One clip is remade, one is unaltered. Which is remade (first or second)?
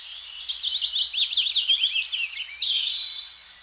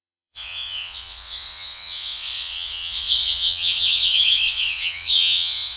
second